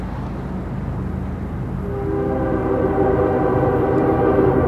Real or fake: real